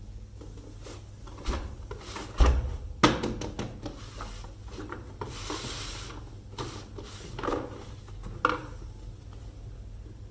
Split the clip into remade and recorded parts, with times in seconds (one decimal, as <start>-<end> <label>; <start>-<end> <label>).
0.0-10.3 recorded